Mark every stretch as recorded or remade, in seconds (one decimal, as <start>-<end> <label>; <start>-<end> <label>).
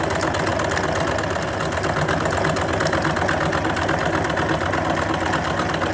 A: 0.0-5.9 recorded